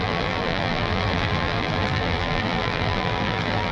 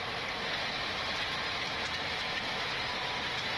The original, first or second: second